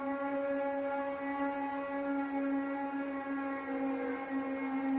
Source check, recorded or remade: recorded